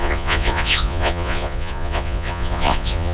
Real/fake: fake